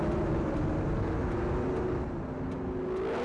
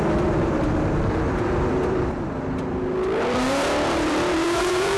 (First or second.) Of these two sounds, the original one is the first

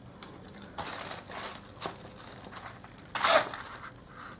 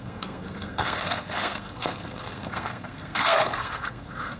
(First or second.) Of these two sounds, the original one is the first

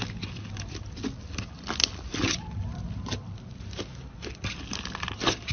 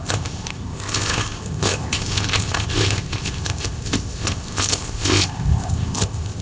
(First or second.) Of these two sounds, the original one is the first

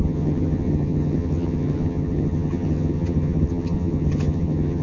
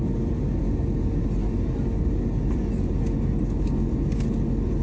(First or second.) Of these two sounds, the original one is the second